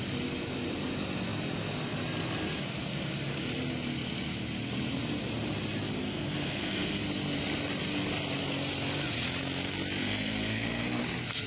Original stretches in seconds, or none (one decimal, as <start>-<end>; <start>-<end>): 0.0-6.0; 7.0-10.0; 11.0-11.5